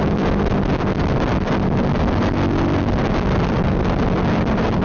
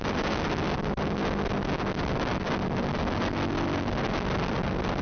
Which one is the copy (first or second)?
first